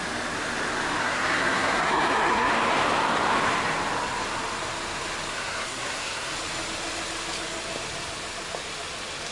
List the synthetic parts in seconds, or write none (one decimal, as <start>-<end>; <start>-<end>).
1.0-2.5; 5.3-6.3